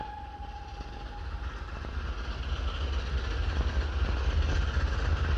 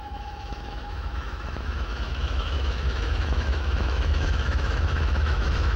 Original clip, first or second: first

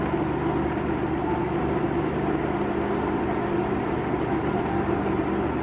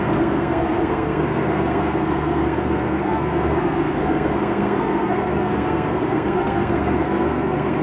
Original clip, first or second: first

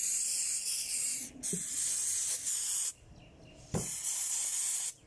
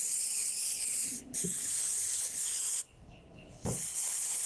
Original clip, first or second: first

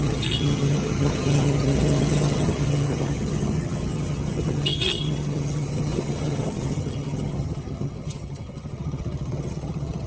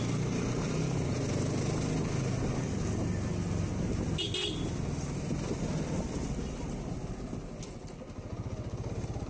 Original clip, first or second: second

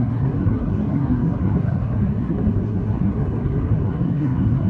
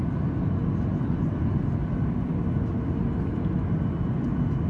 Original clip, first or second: second